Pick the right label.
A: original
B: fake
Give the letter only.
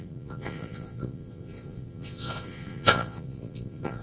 B